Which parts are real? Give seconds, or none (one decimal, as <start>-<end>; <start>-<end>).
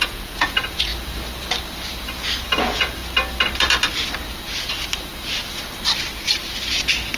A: 0.9-2.6; 3.0-7.2